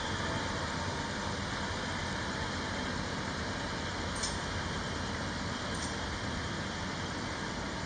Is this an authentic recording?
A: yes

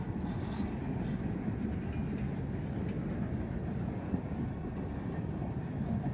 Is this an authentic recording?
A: yes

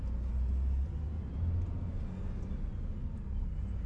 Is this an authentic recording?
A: yes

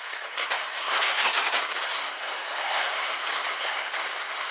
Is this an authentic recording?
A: no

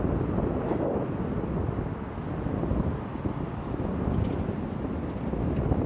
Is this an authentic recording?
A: yes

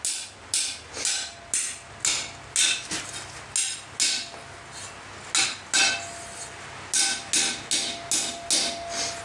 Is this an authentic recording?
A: yes